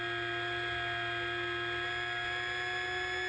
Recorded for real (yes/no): yes